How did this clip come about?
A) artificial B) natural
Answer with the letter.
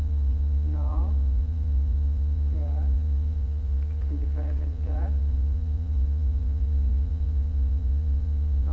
A